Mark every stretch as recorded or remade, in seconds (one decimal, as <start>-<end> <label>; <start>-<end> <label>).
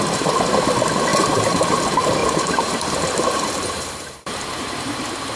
0.0-1.1 recorded; 1.1-1.8 remade; 1.8-2.2 recorded; 2.2-5.4 remade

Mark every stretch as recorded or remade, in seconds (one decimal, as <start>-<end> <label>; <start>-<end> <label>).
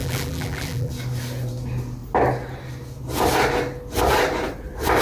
0.0-0.9 remade; 0.9-5.0 recorded